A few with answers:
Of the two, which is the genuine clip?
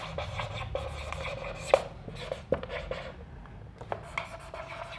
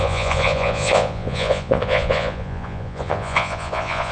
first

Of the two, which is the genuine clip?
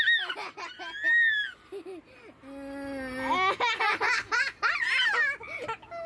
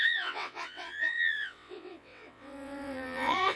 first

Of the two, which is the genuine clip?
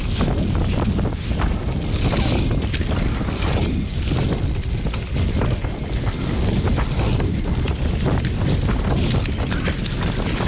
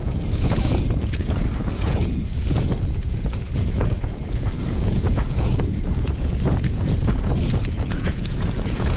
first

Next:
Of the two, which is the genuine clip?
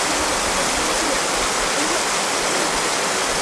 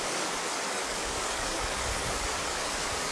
first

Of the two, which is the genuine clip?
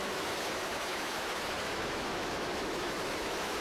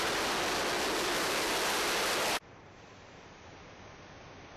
second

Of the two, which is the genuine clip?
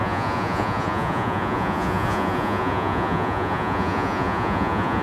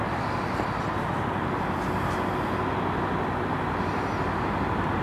second